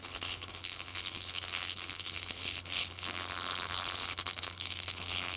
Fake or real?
fake